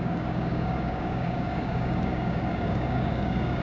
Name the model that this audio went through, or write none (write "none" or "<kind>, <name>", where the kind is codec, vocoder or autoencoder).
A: codec, DAC